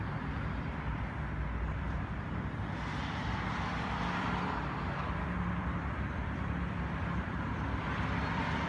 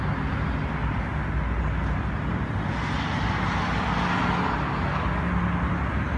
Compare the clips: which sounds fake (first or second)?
first